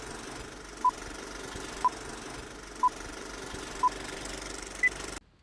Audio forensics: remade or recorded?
recorded